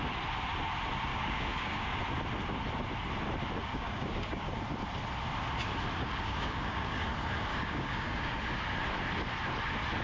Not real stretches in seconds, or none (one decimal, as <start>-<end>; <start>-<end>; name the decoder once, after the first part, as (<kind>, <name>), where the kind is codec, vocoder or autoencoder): 1.1-2.0 (codec, DAC); 3.7-4.5; 6.0-7.1; 7.5-8.3